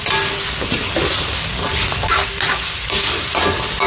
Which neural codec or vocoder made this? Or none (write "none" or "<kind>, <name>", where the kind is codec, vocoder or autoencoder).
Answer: none